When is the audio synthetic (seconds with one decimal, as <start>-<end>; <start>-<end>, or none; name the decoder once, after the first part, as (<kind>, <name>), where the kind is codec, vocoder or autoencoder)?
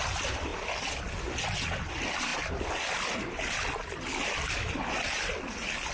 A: none